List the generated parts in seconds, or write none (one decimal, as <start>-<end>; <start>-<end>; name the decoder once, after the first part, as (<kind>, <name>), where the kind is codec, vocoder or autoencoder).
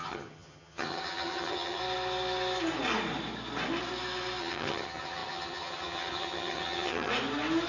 0.0-1.8 (vocoder, HiFi-GAN); 4.4-7.1